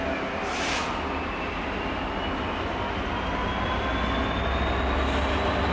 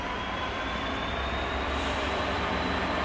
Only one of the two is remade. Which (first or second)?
second